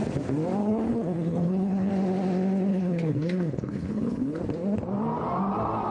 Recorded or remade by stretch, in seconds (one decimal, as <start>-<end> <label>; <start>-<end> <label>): 0.0-0.6 recorded; 0.6-1.9 remade; 1.9-2.7 recorded; 2.7-4.4 remade; 4.4-5.9 recorded